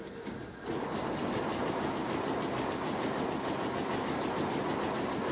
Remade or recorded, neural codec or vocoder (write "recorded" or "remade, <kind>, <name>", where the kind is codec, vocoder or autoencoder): recorded